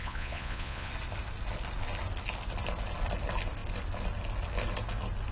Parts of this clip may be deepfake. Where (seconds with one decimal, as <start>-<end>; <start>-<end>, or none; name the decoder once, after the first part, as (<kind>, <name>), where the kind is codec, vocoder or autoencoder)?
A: 0.0-0.9 (vocoder, Vocos)